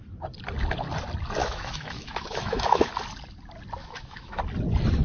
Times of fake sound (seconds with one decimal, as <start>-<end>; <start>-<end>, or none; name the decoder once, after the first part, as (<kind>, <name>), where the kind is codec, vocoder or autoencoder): 1.4-2.9 (autoencoder, DAC-VAE); 3.8-4.4